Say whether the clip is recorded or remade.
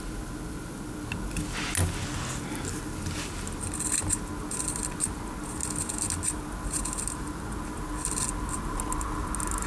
recorded